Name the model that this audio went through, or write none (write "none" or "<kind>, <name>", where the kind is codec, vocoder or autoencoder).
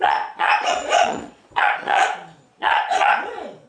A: vocoder, Vocos